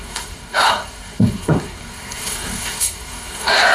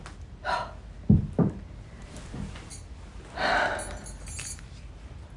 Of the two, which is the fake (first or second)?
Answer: first